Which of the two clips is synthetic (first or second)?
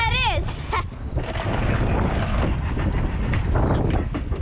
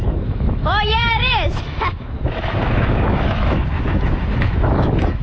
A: second